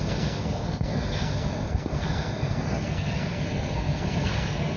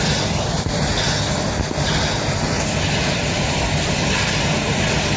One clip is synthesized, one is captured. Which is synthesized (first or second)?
first